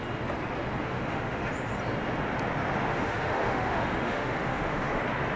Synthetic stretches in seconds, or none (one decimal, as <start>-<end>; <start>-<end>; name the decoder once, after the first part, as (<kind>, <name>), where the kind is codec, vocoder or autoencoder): 0.8-1.5 (autoencoder, DAC-VAE); 2.9-5.0

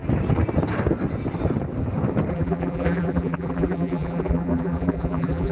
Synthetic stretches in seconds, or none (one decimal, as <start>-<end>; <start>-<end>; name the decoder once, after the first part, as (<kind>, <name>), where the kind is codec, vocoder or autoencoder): 2.3-5.5 (vocoder, BigVGAN v2)